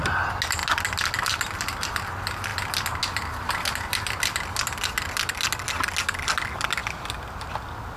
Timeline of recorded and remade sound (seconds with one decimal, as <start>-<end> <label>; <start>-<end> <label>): 0.0-8.0 recorded